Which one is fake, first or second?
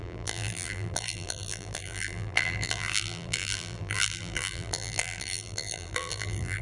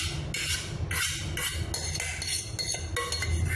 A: first